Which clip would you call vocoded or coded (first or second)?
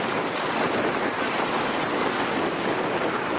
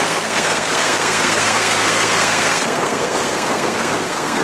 second